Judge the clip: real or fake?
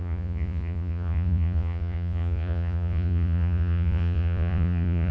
fake